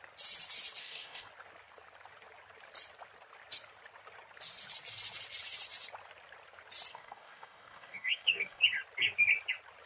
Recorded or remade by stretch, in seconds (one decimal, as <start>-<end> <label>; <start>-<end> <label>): 0.0-0.8 recorded; 0.8-1.3 remade; 1.3-6.9 recorded; 6.9-8.6 remade; 8.6-9.9 recorded